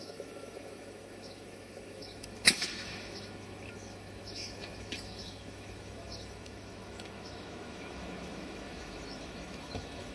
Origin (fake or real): fake